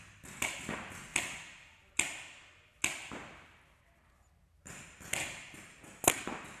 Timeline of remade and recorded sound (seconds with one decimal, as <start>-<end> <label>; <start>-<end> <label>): 0.0-6.6 recorded